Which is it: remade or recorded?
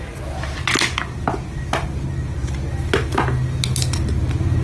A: recorded